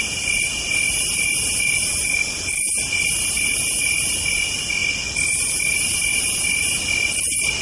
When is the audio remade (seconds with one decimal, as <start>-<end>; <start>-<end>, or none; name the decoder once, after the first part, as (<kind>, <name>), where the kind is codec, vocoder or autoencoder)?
none